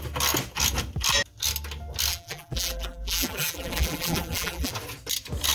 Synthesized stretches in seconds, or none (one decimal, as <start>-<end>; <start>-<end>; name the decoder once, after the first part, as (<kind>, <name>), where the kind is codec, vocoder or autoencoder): 2.1-4.7 (vocoder, BigVGAN v2)